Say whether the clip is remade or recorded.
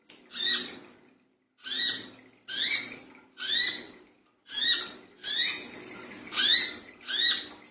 recorded